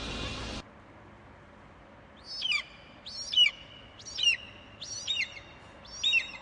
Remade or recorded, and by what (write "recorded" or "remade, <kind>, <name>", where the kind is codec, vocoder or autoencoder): recorded